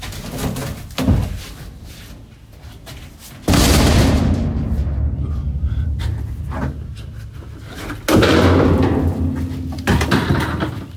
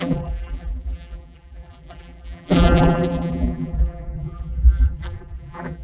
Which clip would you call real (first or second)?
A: first